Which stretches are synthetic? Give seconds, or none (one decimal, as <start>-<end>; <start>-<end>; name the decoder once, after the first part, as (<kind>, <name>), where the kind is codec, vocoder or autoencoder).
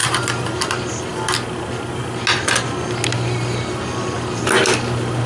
none